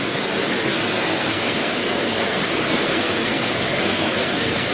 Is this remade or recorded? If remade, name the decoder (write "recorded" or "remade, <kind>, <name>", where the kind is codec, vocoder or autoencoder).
remade, codec, SNAC